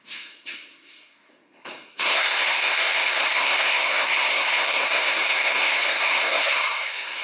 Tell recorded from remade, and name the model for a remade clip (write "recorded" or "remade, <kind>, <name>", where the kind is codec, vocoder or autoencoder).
remade, codec, SNAC